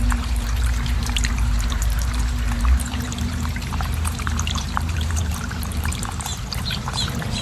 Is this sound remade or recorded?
remade